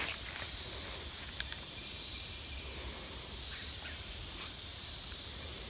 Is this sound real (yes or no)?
yes